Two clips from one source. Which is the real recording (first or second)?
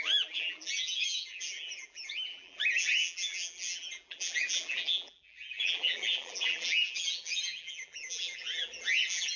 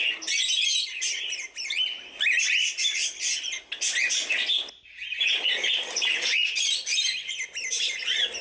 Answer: second